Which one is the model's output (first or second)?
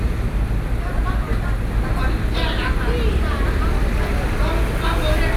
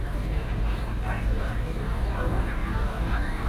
second